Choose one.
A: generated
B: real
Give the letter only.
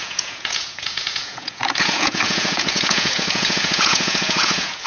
A